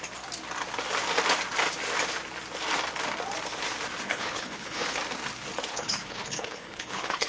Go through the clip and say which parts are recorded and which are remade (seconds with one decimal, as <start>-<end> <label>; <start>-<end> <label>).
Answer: 0.0-4.1 recorded; 4.1-5.0 remade; 5.0-5.7 recorded; 5.7-7.3 remade